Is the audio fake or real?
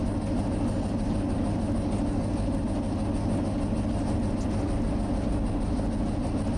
real